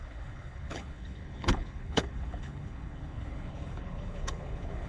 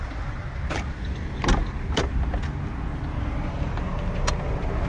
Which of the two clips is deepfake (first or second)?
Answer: first